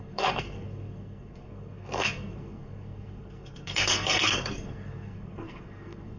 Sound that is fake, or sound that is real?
fake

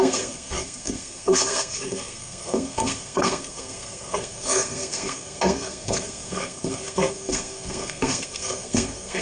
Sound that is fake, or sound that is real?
fake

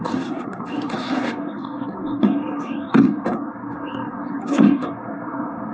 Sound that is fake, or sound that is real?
fake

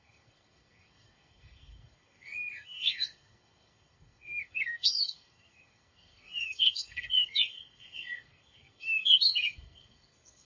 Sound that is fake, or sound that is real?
fake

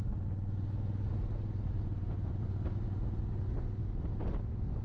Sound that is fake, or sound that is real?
real